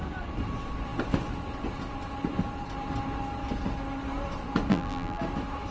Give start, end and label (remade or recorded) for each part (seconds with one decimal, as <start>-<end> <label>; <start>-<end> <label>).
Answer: 0.0-4.7 recorded; 4.7-5.2 remade; 5.2-5.7 recorded

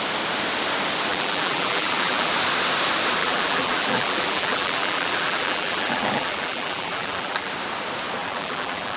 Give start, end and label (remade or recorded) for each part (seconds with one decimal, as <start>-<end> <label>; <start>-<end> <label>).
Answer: 0.0-1.1 recorded; 1.1-2.3 remade; 2.3-3.2 recorded; 3.2-7.5 remade; 7.5-8.2 recorded; 8.2-9.0 remade

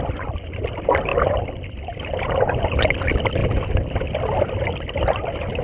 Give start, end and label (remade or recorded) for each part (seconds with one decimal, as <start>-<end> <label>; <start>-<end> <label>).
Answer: 0.0-5.6 recorded

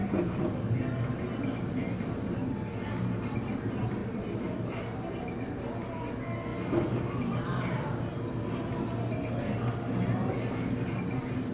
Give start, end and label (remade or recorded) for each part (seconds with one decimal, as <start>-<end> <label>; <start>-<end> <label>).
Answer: 0.0-4.0 recorded; 4.0-4.8 remade; 4.8-11.5 recorded

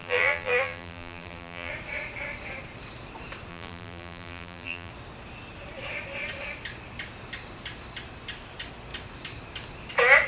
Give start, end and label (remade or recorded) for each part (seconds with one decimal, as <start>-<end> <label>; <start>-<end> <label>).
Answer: 0.0-1.7 remade; 1.7-3.5 recorded; 3.5-4.9 remade; 4.9-10.3 recorded